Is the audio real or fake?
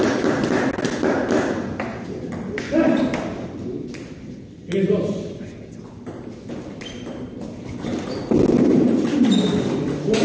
real